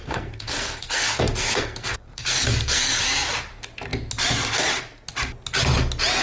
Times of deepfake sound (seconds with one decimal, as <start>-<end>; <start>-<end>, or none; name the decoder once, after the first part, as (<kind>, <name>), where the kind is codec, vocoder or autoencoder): 0.0-3.0 (codec, SNAC)